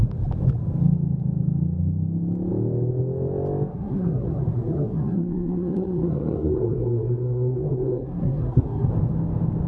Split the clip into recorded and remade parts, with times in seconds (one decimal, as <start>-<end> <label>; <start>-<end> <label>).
0.0-3.7 recorded; 3.7-8.9 remade; 8.9-9.7 recorded